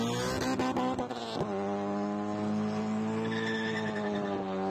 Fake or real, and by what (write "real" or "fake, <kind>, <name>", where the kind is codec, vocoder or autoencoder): real